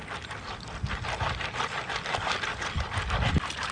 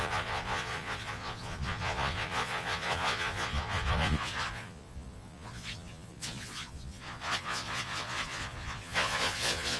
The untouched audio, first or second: first